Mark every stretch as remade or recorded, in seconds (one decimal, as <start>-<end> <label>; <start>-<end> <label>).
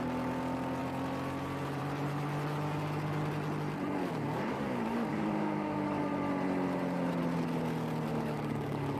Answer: 0.0-4.0 recorded; 4.0-6.0 remade; 6.0-8.1 recorded; 8.1-9.0 remade